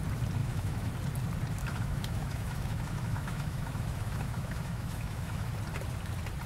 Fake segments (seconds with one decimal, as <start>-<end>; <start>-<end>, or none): 0.4-0.9; 1.6-5.5